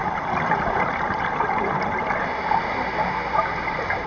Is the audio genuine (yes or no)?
yes